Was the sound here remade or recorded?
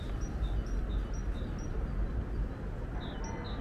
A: recorded